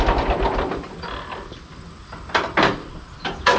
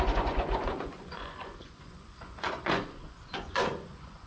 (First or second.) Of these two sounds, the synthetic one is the second